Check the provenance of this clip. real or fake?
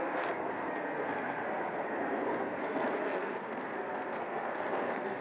fake